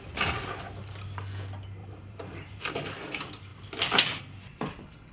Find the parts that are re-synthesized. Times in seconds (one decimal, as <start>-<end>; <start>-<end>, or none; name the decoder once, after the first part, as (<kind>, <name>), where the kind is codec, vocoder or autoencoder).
1.8-2.7 (vocoder, BigVGAN v2)

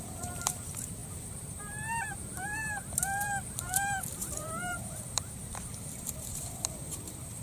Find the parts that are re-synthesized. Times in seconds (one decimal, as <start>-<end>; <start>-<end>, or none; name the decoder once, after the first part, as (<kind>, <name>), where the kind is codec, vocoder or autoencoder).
0.0-7.4 (vocoder, BigVGAN v2)

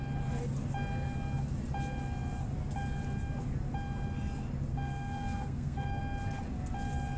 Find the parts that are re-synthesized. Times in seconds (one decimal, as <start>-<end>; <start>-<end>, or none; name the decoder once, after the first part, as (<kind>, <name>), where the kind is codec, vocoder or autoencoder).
4.7-6.0 (codec, SNAC)

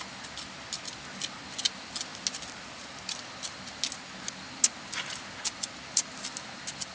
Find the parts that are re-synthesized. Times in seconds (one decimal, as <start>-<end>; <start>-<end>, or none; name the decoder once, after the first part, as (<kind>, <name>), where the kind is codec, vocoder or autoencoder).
none

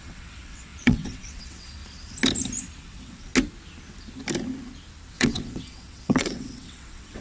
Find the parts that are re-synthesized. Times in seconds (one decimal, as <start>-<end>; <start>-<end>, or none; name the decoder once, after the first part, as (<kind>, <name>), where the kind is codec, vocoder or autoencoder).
0.0-1.8 (vocoder, WaveNeXt); 2.8-3.3; 5.1-7.2

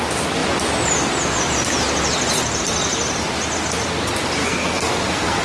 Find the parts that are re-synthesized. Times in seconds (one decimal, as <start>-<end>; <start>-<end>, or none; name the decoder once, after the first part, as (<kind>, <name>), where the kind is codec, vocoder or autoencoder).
4.4-5.4 (codec, SNAC)